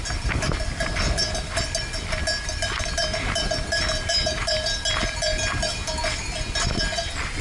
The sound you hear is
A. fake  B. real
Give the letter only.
B